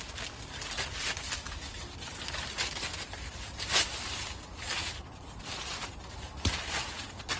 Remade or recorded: recorded